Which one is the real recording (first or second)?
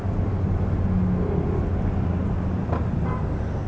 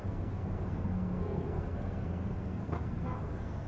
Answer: first